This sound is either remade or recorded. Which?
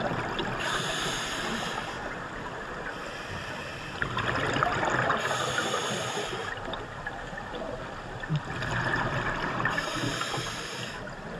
recorded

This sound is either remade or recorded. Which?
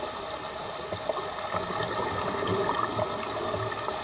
recorded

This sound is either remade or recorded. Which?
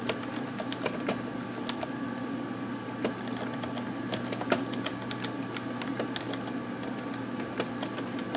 recorded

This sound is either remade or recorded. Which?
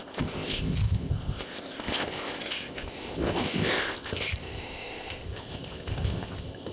remade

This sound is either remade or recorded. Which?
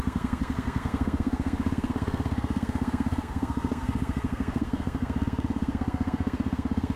remade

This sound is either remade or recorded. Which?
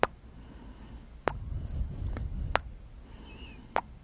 recorded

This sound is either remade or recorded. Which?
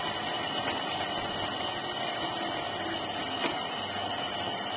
recorded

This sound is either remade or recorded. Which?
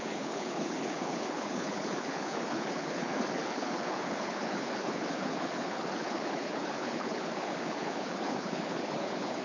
remade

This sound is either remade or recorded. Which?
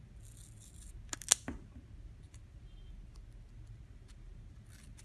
recorded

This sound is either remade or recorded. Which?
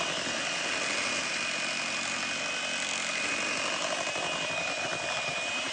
remade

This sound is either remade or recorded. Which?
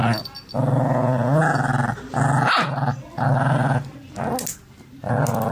recorded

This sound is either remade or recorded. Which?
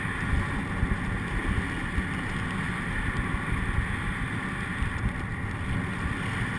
recorded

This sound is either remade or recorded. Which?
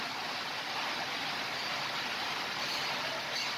recorded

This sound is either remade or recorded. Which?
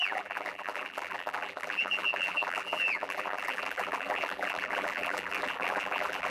remade